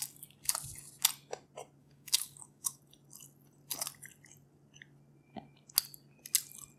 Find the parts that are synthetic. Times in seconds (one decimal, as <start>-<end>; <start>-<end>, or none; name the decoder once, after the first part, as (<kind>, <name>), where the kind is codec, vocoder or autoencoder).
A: 1.8-2.8 (codec, DAC)